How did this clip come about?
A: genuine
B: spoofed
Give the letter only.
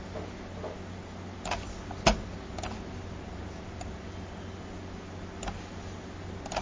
A